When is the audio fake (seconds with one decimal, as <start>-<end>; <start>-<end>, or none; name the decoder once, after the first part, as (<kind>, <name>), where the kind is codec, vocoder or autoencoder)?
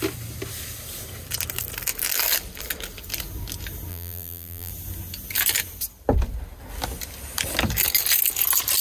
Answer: 3.9-4.7 (vocoder, BigVGAN v2)